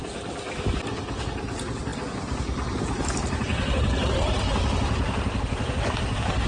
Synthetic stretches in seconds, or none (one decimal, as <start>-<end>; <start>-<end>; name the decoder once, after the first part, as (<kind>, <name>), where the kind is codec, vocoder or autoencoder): none